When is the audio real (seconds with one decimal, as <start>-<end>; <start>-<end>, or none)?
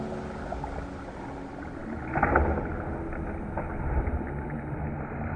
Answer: 0.0-5.4